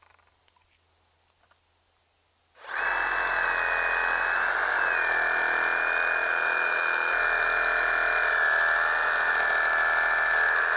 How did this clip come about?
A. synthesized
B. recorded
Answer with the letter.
B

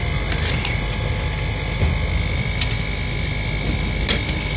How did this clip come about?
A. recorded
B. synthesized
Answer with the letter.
A